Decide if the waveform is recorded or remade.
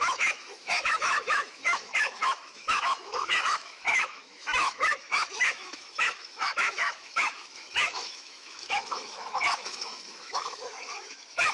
remade